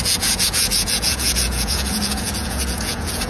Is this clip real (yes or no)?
no